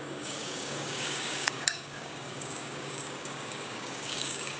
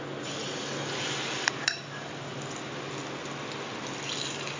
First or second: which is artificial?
first